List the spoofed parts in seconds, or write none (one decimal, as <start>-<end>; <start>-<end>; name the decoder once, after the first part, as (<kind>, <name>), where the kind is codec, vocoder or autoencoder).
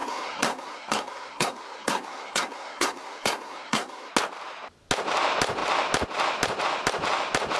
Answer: 0.0-4.1 (codec, SNAC)